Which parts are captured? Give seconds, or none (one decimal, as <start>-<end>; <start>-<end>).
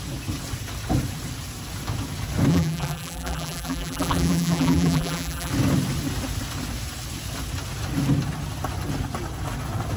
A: 0.0-2.5; 5.5-10.0